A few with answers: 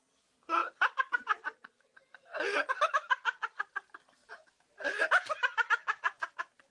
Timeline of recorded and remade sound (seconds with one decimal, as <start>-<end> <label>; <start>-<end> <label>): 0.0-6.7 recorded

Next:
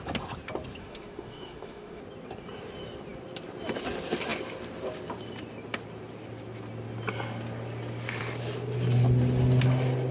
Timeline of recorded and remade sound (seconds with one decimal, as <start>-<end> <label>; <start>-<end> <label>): 0.0-0.8 recorded; 0.8-2.0 remade; 2.0-10.1 recorded

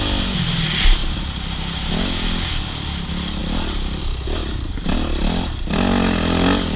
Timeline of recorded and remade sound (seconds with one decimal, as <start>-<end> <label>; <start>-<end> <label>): 0.0-1.0 recorded; 1.0-1.9 remade; 1.9-3.4 recorded; 3.4-4.0 remade; 4.0-4.4 recorded; 4.4-4.9 remade; 4.9-6.8 recorded